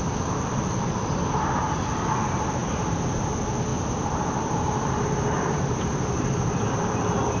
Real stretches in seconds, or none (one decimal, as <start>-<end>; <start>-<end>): 0.0-2.6; 3.2-3.7; 7.0-7.4